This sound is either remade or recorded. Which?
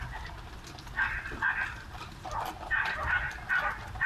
recorded